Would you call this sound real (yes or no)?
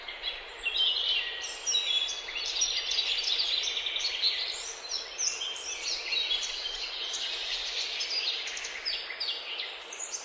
yes